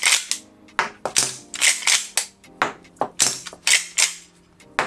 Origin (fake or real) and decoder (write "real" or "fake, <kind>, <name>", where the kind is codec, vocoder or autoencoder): real